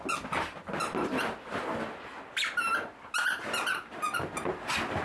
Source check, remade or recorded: recorded